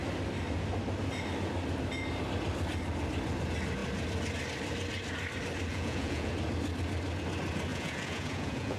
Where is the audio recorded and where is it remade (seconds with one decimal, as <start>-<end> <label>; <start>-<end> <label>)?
0.0-5.7 recorded; 5.7-6.3 remade; 6.3-7.7 recorded; 7.7-8.8 remade